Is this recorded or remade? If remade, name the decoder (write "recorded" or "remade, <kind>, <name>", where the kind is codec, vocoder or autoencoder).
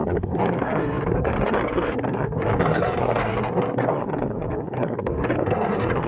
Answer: remade, codec, SNAC